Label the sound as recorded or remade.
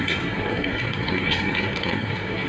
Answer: remade